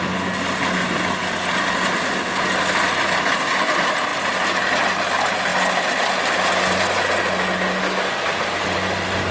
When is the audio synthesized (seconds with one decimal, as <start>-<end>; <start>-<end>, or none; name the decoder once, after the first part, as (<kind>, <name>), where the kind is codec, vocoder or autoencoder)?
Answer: none